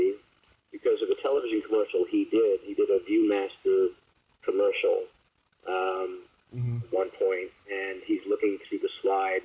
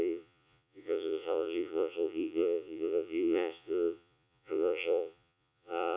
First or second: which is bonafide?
first